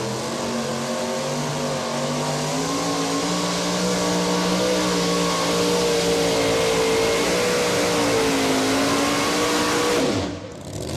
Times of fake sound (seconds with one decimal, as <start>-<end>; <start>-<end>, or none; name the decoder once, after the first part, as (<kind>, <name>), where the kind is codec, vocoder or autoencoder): none